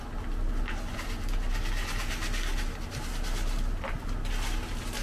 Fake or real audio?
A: real